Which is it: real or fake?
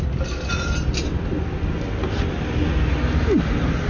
real